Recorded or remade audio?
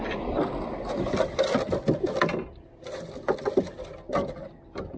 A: recorded